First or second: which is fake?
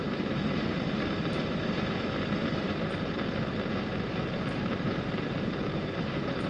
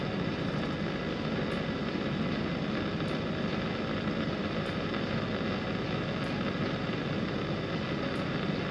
first